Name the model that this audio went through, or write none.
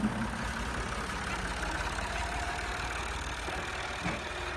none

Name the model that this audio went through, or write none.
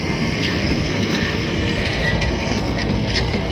codec, SNAC